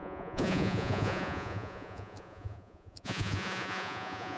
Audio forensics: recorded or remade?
remade